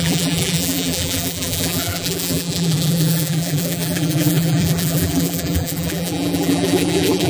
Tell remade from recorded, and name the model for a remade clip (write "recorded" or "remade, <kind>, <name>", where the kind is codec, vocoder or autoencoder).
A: remade, vocoder, BigVGAN v2